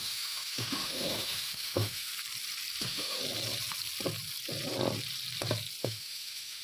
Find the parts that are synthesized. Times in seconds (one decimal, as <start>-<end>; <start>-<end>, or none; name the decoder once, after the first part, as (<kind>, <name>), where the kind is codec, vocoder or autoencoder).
0.0-2.1 (autoencoder, DAC-VAE); 2.8-3.2; 5.8-6.6